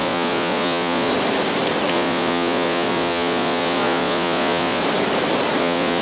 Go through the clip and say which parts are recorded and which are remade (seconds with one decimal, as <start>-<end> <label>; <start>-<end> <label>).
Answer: 0.0-1.1 remade; 1.1-1.9 recorded; 1.9-4.8 remade; 4.8-5.6 recorded; 5.6-6.0 remade